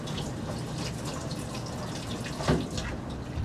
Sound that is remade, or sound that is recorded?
recorded